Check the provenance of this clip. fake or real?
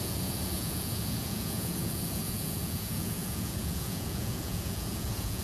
fake